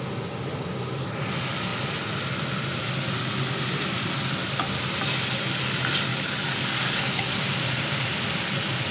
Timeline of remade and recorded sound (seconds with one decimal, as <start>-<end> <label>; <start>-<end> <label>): 0.0-6.1 recorded; 6.1-7.4 remade; 7.4-8.9 recorded